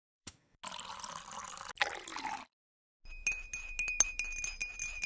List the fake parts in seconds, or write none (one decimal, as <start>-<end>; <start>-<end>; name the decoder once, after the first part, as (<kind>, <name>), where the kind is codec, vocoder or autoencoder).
0.0-0.6 (autoencoder, DAC-VAE)